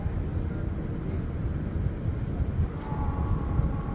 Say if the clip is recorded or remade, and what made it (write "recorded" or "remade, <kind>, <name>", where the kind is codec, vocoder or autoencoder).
recorded